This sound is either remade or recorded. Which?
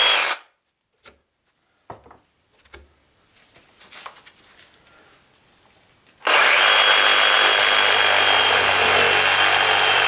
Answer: recorded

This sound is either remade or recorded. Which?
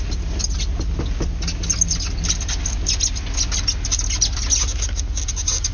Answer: recorded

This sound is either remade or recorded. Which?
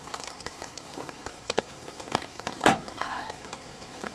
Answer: remade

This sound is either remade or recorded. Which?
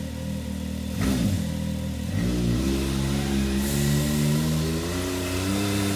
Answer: recorded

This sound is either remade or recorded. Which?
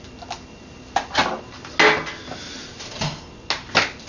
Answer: recorded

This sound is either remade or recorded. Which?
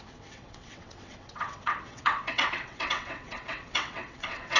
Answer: remade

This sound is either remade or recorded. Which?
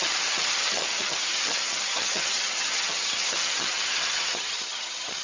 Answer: remade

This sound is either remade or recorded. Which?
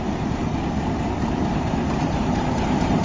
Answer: remade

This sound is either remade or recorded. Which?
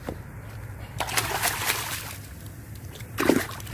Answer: recorded